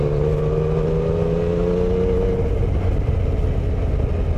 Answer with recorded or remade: recorded